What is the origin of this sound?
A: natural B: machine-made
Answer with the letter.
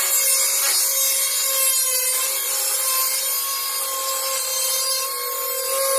A